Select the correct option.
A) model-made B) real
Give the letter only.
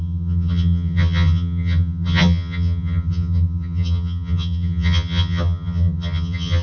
A